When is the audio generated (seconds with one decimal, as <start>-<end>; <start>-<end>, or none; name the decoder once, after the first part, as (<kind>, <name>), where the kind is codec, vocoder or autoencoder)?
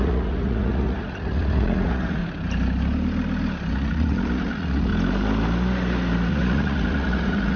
0.0-2.2 (vocoder, Vocos); 3.7-4.9; 6.3-7.6